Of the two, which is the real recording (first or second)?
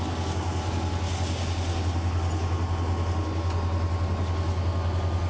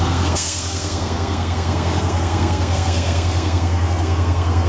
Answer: first